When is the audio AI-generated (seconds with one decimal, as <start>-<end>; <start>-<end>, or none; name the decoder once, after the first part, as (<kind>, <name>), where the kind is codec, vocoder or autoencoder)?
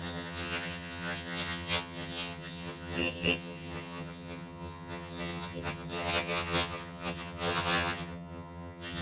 0.0-9.0 (vocoder, HiFi-GAN)